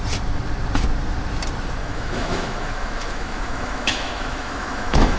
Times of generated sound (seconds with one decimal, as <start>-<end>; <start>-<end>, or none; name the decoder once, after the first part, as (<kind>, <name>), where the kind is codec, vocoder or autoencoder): 1.8-5.2 (autoencoder, DAC-VAE)